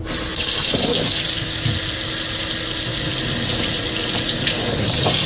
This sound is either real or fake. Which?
real